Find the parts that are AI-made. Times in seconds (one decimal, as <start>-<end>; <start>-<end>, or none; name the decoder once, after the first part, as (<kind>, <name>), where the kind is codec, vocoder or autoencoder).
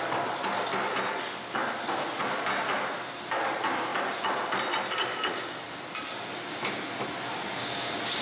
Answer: none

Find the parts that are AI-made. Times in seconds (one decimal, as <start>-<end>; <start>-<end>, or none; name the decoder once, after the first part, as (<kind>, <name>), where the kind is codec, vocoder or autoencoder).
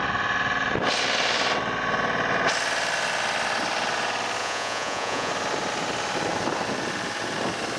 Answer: 4.4-5.3 (vocoder, Vocos)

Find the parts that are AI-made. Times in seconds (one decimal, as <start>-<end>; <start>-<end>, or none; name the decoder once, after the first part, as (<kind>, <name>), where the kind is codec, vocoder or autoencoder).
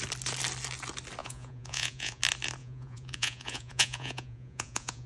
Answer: 1.2-2.2 (vocoder, Vocos); 2.6-5.1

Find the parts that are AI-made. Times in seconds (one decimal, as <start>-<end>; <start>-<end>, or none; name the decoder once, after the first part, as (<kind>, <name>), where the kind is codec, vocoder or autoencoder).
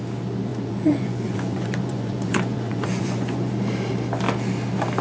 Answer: 0.5-3.5 (vocoder, Vocos)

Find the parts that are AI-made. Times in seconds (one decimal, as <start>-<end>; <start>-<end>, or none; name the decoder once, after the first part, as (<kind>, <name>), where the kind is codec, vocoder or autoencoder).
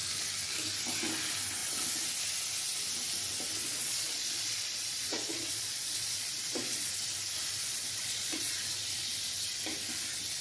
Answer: 3.6-6.9 (vocoder, Vocos); 7.6-9.1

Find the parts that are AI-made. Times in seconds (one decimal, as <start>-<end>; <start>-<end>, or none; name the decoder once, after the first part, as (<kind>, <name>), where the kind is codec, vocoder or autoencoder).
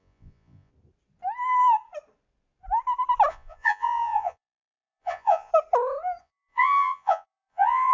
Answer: 0.0-0.7 (vocoder, Vocos); 3.3-5.5; 6.2-7.9